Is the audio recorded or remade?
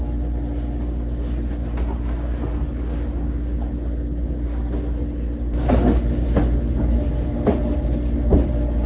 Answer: recorded